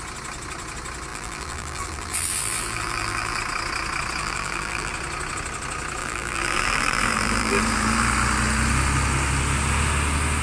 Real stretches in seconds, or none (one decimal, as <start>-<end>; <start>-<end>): 0.0-1.1; 3.4-4.2; 4.9-6.0; 7.6-10.4